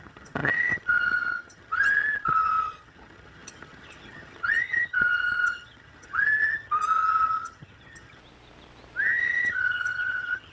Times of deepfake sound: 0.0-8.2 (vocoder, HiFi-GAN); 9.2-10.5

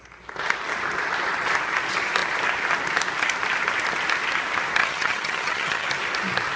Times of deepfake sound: 4.8-5.9 (vocoder, HiFi-GAN)

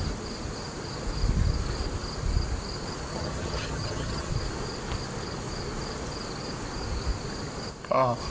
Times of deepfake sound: 3.1-4.3 (vocoder, HiFi-GAN)

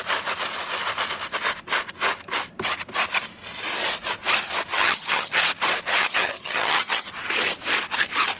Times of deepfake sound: 4.7-5.4 (vocoder, HiFi-GAN); 6.0-7.1